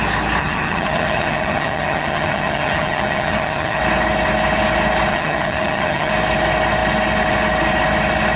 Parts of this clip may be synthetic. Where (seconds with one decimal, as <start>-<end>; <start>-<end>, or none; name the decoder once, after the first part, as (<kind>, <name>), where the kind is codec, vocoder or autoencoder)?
0.4-3.8 (vocoder, HiFi-GAN); 5.1-6.1